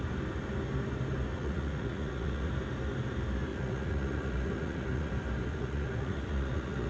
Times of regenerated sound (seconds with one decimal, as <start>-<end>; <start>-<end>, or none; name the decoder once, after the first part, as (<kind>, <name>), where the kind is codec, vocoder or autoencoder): 1.3-2.5 (vocoder, Vocos); 3.5-5.1; 5.5-6.9